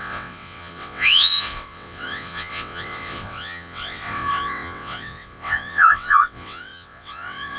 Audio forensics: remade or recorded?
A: remade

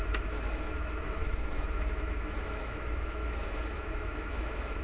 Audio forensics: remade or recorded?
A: remade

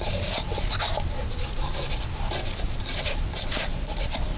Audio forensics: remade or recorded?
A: recorded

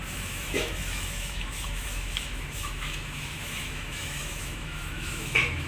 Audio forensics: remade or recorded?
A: remade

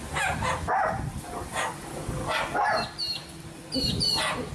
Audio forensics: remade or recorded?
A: recorded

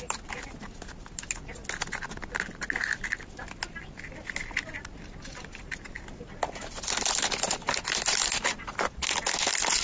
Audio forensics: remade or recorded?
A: recorded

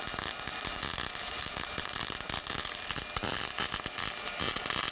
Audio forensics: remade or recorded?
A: recorded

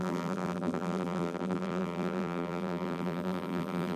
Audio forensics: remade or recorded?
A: remade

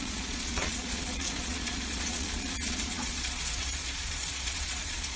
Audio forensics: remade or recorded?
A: remade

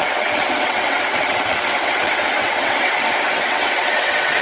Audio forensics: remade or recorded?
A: remade